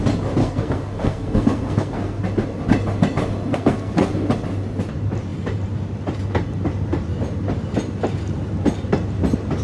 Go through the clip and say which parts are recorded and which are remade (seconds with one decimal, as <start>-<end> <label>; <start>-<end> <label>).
0.0-0.4 recorded; 0.4-2.2 remade; 2.2-3.5 recorded; 3.5-4.1 remade; 4.1-9.6 recorded